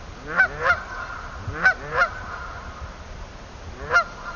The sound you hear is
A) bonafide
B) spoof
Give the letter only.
A